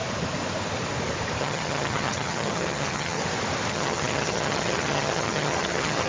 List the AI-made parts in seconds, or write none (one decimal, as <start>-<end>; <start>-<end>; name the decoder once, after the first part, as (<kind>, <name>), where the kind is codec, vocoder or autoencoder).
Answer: 1.4-3.2 (vocoder, HiFi-GAN); 3.7-6.1